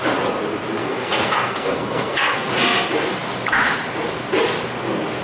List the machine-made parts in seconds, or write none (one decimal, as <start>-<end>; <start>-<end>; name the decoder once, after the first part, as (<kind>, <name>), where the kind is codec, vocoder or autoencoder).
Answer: 0.8-2.5 (codec, SNAC)